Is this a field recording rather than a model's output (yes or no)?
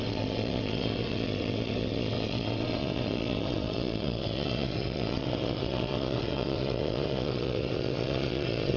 no